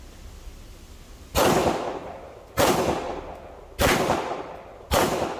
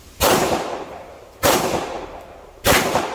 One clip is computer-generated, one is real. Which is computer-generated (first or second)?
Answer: second